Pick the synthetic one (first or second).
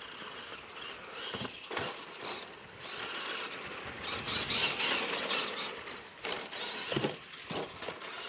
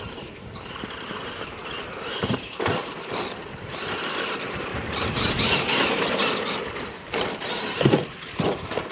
second